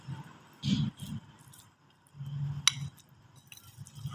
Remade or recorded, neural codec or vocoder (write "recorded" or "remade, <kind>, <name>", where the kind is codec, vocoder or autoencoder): recorded